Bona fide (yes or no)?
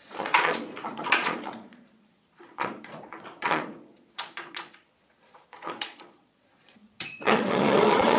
no